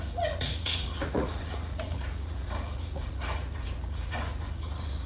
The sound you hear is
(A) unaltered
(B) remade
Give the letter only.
B